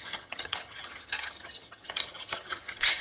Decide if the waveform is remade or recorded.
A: remade